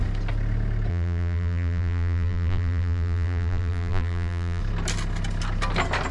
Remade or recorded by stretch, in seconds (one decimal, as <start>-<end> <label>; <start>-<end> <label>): 0.0-0.9 recorded; 0.9-4.6 remade; 4.6-6.1 recorded